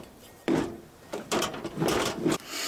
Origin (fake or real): fake